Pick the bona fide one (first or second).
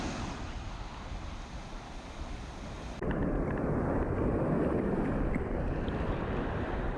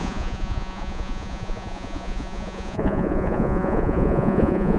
first